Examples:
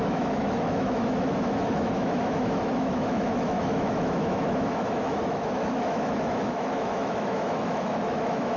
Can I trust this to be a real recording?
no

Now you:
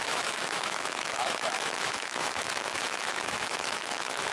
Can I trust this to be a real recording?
no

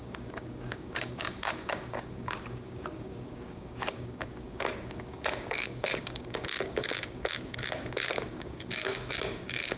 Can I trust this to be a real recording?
no